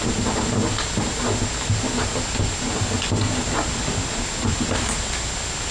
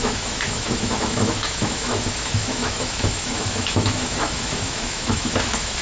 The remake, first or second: second